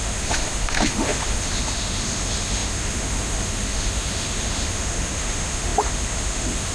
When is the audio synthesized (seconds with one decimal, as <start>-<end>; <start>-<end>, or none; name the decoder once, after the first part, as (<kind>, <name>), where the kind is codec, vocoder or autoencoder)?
0.0-6.7 (autoencoder, DAC-VAE)